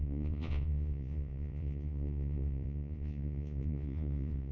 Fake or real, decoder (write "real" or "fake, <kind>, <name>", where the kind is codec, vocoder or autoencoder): fake, vocoder, Vocos